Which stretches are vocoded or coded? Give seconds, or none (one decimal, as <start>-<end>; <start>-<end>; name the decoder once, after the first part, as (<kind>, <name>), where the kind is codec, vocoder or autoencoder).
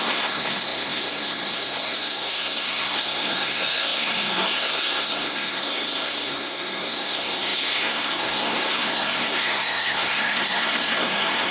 0.0-11.5 (codec, SNAC)